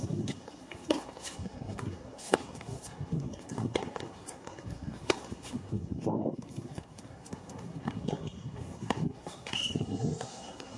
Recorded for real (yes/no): no